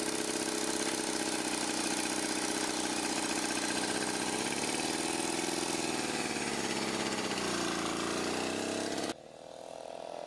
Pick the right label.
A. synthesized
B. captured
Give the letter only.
B